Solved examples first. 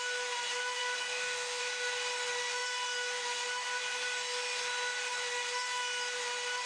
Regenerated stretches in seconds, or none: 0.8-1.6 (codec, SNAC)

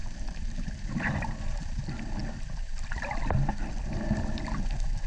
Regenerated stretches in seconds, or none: 0.0-1.6 (vocoder, BigVGAN v2)

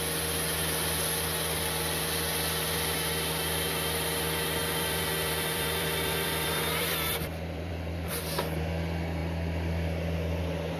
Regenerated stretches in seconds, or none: 4.6-8.2 (vocoder, BigVGAN v2)

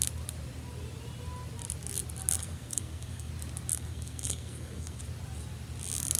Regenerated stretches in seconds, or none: 2.4-3.3 (codec, SNAC); 3.7-5.0

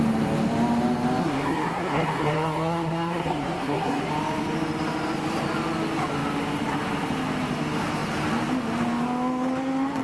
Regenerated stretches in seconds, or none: 1.2-4.1 (codec, SNAC)